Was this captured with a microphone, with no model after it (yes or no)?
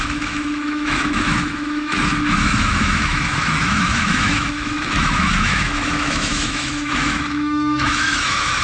no